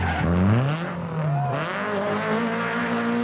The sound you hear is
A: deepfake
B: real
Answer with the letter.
B